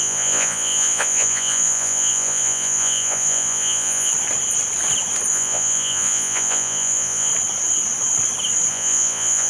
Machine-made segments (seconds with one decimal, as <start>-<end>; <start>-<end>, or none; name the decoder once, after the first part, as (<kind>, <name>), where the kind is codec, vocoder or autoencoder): 0.0-4.1 (vocoder, Vocos); 5.3-7.3; 8.7-9.5